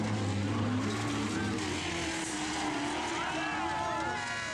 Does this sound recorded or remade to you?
recorded